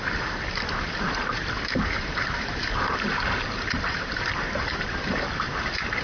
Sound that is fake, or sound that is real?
fake